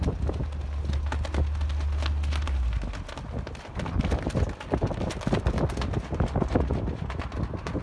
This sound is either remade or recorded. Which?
recorded